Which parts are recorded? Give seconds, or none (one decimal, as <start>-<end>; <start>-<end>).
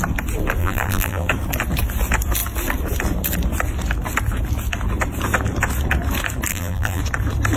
0.0-0.6; 1.3-6.5; 7.0-7.6